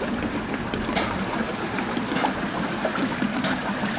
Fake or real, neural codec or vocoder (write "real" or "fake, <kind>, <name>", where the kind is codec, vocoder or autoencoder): real